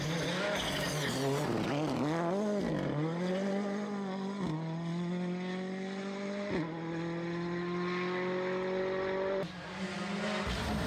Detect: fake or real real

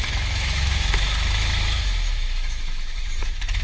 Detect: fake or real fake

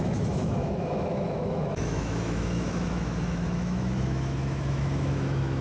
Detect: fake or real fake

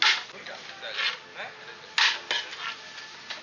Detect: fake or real real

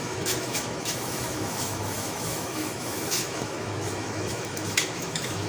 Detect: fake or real fake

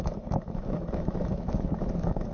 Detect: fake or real fake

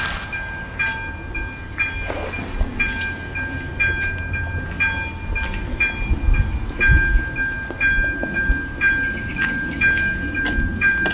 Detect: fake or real real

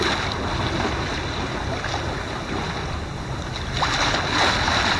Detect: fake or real real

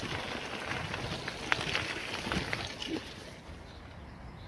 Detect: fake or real real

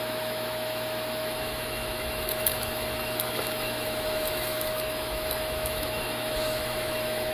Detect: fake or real fake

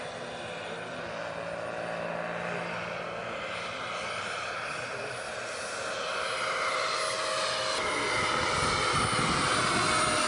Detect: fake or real real